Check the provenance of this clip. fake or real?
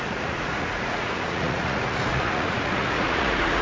fake